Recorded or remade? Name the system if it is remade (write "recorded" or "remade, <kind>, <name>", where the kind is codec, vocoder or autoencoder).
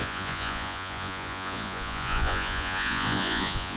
remade, vocoder, Vocos